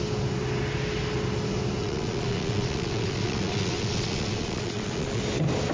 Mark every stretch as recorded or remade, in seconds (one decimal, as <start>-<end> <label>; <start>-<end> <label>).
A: 0.0-1.8 recorded; 1.8-5.2 remade; 5.2-5.7 recorded